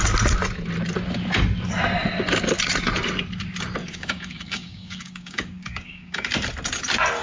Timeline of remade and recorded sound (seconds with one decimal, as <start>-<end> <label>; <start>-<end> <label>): 0.0-3.8 recorded; 3.8-6.3 remade; 6.3-7.2 recorded